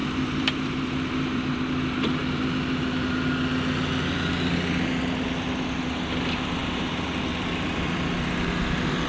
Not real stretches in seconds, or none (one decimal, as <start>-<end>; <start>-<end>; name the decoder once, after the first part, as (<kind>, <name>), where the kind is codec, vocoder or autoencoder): 0.0-1.6 (vocoder, BigVGAN v2); 6.6-8.5